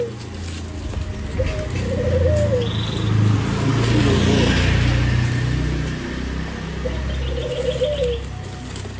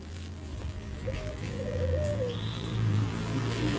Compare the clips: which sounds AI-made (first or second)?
second